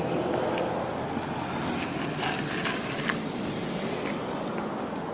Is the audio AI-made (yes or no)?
no